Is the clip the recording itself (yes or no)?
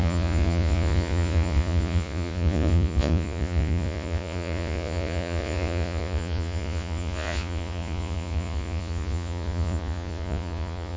no